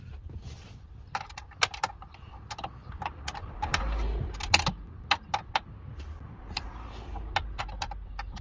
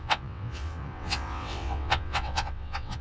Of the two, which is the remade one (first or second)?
second